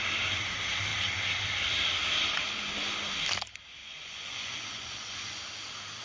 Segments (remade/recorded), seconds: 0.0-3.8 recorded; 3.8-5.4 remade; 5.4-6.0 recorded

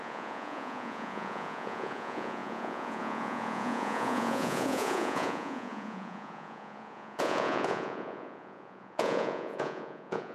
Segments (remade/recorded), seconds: 0.0-10.3 remade

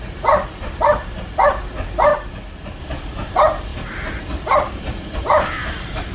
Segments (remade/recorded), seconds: 0.0-6.1 recorded

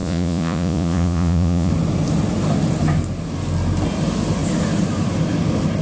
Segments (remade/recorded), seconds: 0.0-1.7 remade; 1.7-5.8 recorded

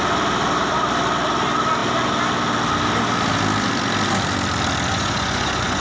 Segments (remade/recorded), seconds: 0.0-4.9 recorded; 4.9-5.8 remade

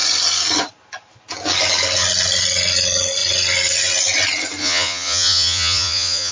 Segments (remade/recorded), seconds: 0.0-4.6 recorded; 4.6-6.3 remade

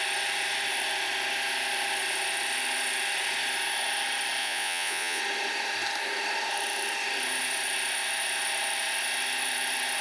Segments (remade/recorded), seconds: 0.0-4.4 recorded; 4.4-5.2 remade; 5.2-10.0 recorded